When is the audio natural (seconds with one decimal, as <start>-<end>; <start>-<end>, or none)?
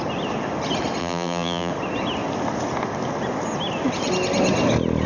0.0-1.0; 1.7-5.1